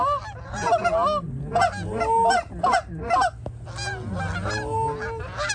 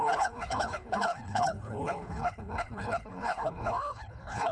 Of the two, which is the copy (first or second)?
second